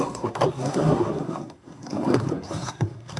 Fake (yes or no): yes